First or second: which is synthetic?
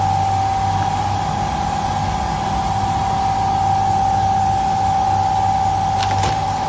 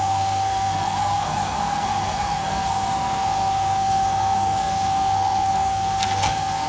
second